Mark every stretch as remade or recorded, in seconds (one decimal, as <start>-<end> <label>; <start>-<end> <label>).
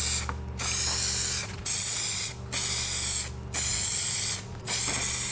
0.0-1.4 recorded; 1.4-2.3 remade; 2.3-3.7 recorded; 3.7-4.8 remade; 4.8-5.3 recorded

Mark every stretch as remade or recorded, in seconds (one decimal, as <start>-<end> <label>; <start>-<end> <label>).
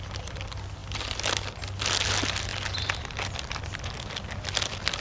0.0-5.0 recorded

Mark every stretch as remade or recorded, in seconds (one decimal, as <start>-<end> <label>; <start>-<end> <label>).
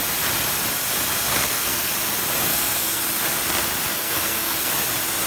0.0-1.4 recorded; 1.4-1.9 remade; 1.9-2.5 recorded; 2.5-3.0 remade; 3.0-3.9 recorded; 3.9-4.7 remade; 4.7-5.3 recorded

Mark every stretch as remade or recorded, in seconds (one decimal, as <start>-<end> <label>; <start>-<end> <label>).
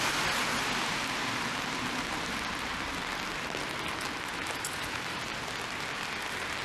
0.0-4.3 recorded; 4.3-5.2 remade; 5.2-6.6 recorded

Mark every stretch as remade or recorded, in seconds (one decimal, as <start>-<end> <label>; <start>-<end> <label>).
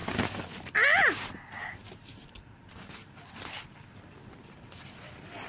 0.0-5.5 recorded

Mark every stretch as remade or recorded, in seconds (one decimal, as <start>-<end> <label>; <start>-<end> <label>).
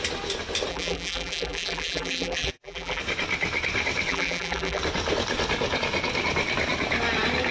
0.0-0.7 recorded; 0.7-3.0 remade; 3.0-4.1 recorded; 4.1-4.8 remade; 4.8-7.5 recorded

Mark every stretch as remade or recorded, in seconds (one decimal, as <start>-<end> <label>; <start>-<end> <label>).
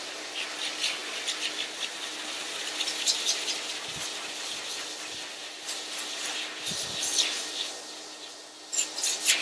0.0-9.4 recorded